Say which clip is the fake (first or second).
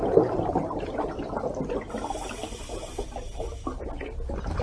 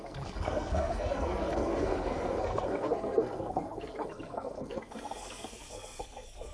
second